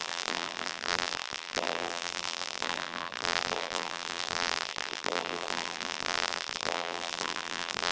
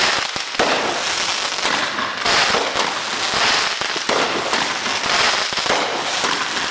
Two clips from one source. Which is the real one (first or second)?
second